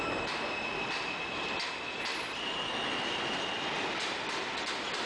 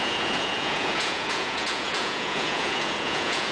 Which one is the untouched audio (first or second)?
first